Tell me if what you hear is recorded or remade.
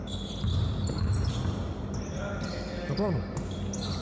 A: recorded